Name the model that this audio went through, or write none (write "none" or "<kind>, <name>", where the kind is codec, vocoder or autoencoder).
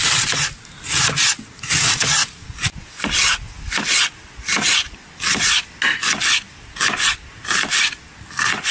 none